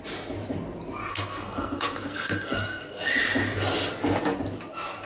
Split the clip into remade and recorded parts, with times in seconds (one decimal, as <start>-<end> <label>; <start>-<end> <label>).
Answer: 0.0-1.1 recorded; 1.1-3.1 remade; 3.1-5.1 recorded